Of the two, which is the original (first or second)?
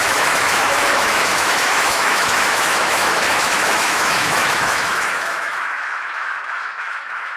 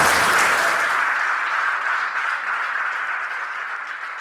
second